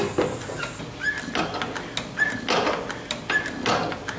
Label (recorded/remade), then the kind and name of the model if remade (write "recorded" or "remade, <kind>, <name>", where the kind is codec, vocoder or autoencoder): recorded